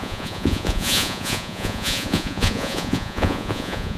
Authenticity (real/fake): fake